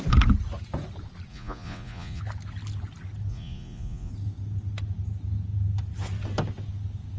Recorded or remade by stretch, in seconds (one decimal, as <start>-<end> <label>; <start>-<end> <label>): 0.0-1.3 recorded; 1.3-2.2 remade; 2.2-3.3 recorded; 3.3-4.1 remade; 4.1-7.2 recorded